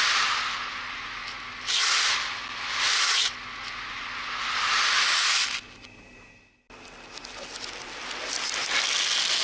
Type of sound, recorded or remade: recorded